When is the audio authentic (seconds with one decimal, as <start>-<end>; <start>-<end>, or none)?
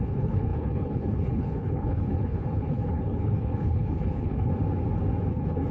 4.5-5.3